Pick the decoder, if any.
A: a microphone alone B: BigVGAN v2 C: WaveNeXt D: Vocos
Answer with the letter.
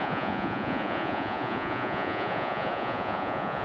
D